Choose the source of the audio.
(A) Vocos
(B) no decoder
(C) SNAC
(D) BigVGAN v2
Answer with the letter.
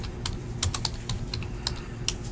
B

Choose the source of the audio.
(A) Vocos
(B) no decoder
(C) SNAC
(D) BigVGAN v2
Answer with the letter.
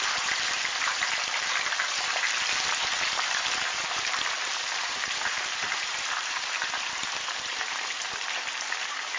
D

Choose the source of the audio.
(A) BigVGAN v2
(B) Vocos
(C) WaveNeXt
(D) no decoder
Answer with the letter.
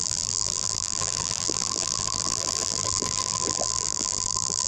A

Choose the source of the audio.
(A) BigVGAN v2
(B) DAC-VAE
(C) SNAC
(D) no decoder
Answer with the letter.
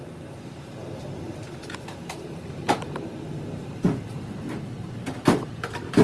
A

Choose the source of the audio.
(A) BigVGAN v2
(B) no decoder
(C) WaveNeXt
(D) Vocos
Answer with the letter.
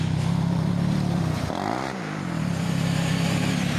A